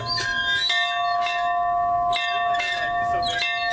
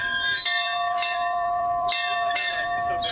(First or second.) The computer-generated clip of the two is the second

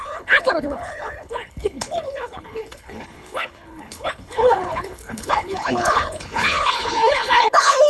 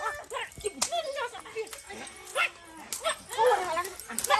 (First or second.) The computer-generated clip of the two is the first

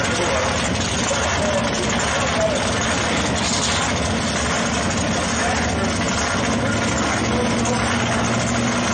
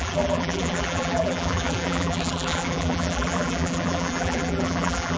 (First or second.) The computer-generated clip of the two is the second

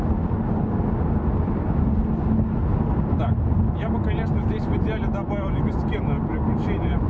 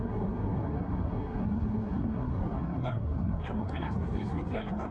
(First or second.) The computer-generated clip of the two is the second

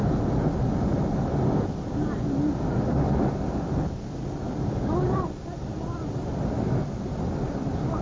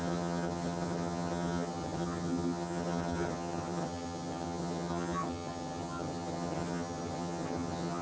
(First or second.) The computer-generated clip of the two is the second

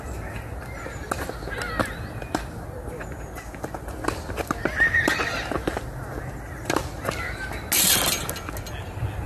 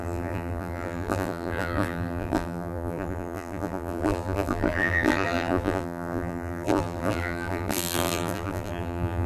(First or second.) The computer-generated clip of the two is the second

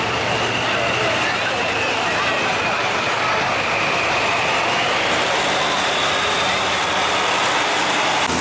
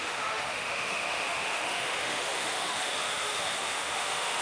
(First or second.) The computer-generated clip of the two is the second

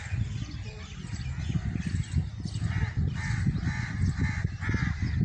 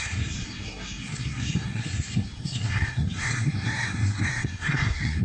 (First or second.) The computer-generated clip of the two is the second